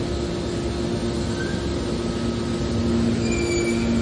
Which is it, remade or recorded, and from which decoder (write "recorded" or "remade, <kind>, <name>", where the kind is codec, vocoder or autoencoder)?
recorded